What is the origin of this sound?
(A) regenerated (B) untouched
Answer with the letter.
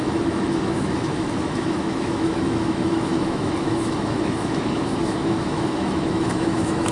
A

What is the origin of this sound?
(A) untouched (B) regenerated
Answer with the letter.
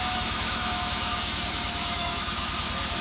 B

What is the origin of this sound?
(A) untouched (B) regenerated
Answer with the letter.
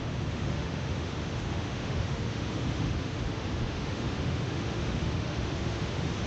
B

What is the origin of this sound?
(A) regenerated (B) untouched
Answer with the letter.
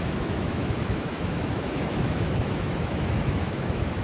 A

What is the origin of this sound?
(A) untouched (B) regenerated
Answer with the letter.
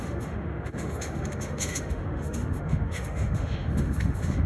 B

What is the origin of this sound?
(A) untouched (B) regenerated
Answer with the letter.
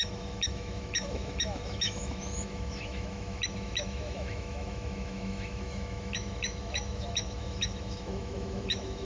B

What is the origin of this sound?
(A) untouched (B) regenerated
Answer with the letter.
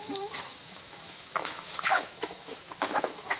B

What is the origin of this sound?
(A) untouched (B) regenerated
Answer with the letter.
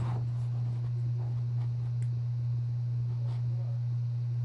A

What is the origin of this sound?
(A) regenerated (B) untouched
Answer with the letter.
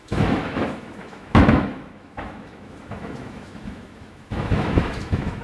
A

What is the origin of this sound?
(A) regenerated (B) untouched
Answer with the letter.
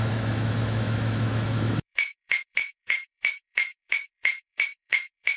A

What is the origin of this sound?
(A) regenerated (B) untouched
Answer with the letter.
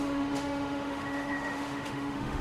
A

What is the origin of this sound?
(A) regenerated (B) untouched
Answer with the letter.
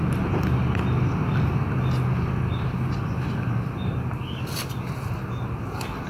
B